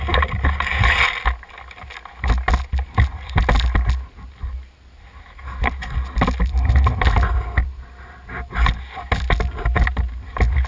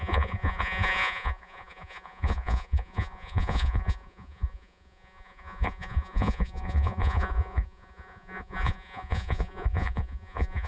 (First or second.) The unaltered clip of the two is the first